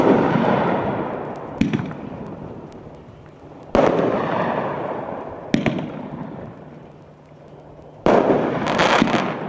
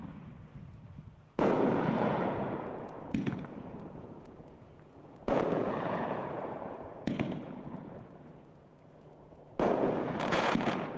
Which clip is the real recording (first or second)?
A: first